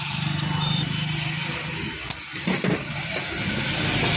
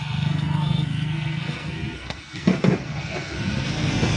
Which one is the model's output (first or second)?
second